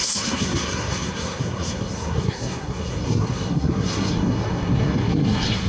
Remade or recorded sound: remade